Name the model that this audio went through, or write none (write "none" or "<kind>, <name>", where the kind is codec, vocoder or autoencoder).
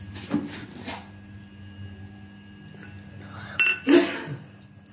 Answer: none